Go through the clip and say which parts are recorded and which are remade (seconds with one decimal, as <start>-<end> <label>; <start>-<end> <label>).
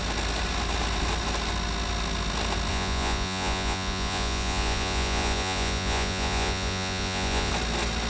0.0-2.7 recorded; 2.7-7.5 remade; 7.5-8.1 recorded